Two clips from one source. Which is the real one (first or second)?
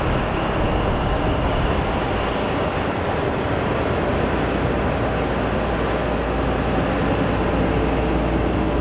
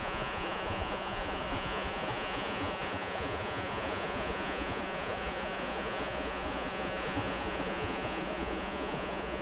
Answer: first